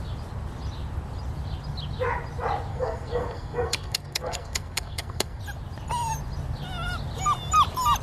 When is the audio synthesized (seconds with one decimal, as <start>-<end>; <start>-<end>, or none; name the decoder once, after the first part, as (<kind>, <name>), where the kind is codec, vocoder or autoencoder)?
2.7-5.4 (codec, SNAC)